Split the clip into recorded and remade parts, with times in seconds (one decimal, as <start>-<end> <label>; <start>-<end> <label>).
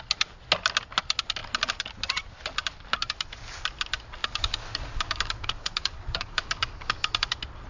0.0-4.2 recorded; 4.2-7.3 remade; 7.3-7.7 recorded